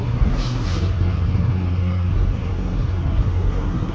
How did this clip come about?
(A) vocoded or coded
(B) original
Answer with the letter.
A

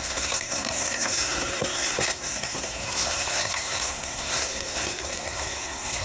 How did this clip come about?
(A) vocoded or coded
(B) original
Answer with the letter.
A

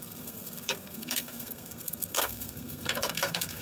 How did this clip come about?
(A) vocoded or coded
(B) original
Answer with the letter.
A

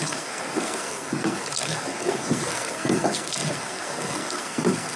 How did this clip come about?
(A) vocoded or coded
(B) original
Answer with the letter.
A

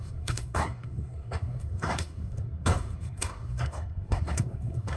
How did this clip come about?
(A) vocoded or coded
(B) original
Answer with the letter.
A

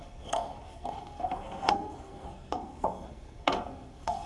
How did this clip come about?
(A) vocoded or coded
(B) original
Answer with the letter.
A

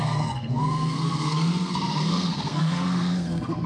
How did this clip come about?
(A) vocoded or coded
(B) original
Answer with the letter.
A